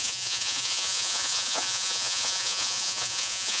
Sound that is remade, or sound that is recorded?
remade